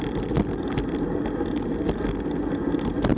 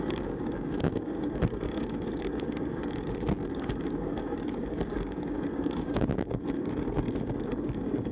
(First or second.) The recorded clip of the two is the first